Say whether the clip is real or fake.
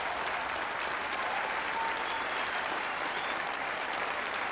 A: real